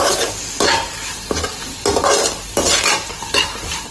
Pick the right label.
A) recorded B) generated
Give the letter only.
A